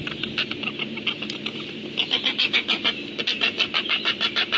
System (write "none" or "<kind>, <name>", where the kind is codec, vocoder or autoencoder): none